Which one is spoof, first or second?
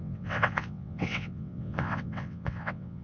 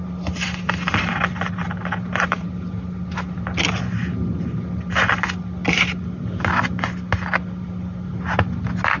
first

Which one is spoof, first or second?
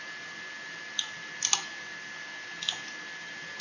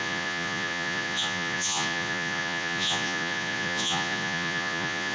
second